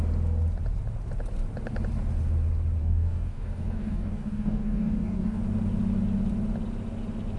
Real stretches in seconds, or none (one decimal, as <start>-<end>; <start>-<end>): 0.0-2.8; 5.4-7.4